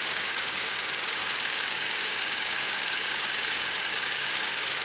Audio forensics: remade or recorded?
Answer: remade